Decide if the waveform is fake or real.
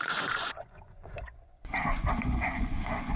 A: fake